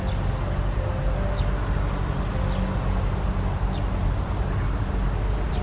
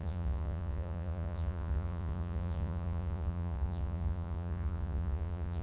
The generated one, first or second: second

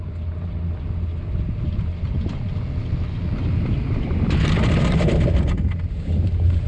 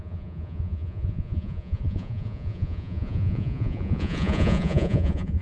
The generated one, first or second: second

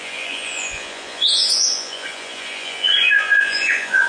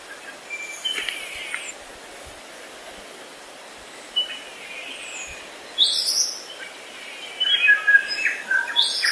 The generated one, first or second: first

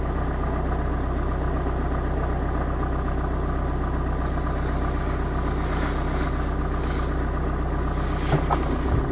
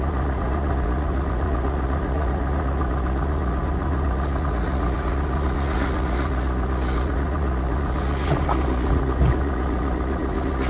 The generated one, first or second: second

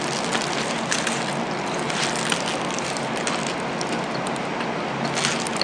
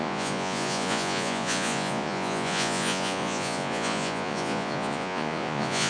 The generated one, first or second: second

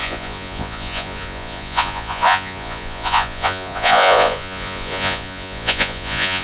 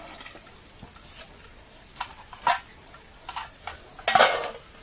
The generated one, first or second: first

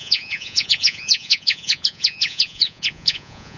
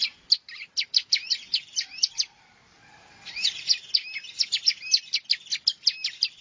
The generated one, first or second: first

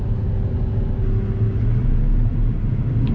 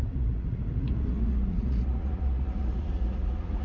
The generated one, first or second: second